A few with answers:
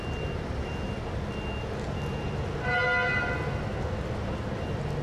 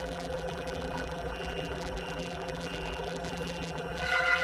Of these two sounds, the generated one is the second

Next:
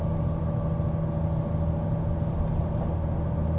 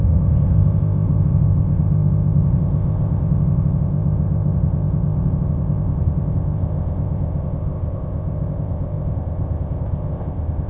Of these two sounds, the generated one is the second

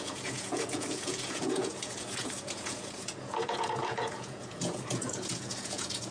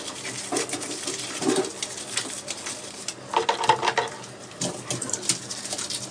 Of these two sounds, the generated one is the first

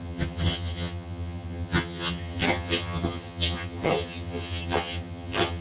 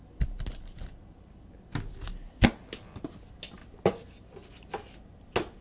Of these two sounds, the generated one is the first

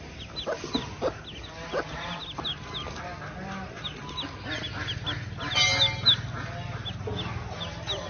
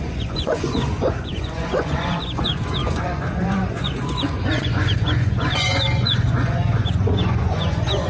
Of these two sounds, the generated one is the second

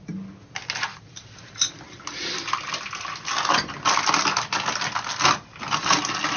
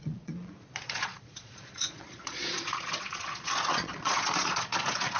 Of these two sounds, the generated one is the second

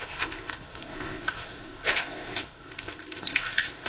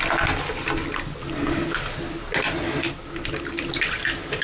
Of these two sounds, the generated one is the first